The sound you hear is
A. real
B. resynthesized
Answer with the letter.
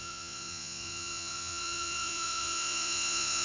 B